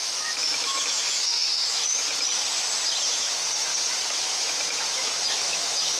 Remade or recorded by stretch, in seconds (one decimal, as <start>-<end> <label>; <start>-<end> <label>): 0.0-2.0 remade; 2.0-3.1 recorded; 3.1-3.7 remade; 3.7-4.2 recorded; 4.2-6.0 remade